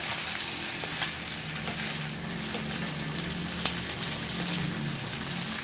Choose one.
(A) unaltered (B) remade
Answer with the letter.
A